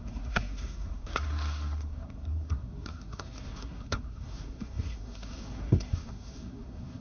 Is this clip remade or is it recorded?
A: remade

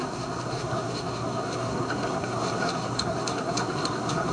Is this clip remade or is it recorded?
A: remade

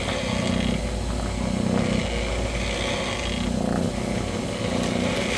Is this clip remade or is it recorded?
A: recorded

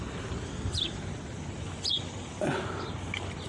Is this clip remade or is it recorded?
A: recorded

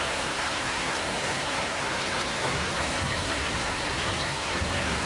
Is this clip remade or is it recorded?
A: remade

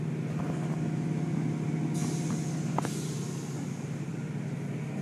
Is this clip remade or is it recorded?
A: recorded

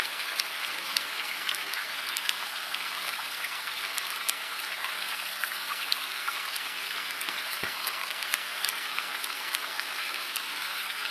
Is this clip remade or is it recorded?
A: remade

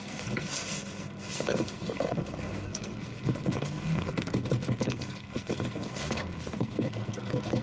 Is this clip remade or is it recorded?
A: remade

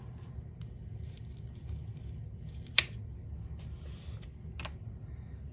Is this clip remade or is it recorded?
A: recorded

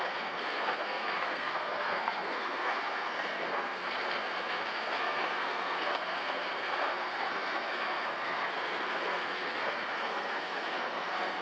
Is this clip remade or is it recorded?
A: remade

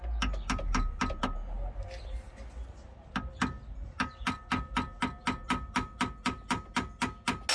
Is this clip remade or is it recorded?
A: recorded